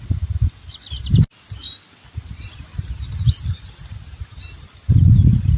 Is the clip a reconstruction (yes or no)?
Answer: no